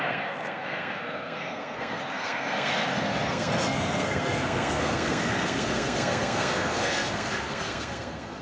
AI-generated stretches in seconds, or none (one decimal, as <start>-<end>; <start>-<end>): 0.0-8.4